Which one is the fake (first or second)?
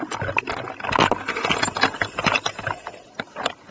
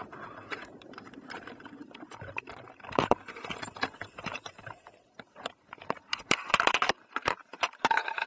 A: second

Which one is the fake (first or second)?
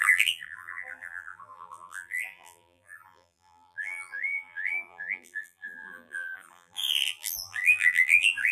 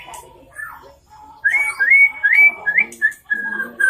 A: first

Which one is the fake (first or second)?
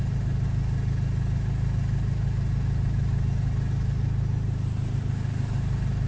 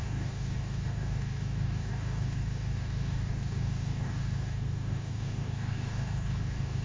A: second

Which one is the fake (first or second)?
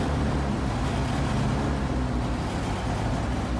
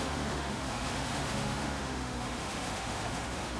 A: second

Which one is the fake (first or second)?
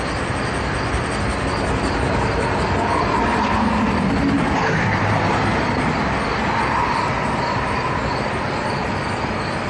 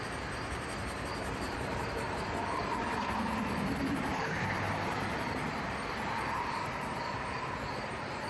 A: second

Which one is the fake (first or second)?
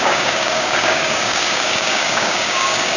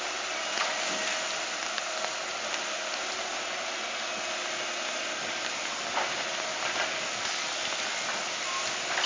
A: first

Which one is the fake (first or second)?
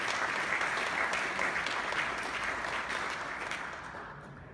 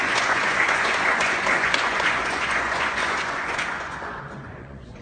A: second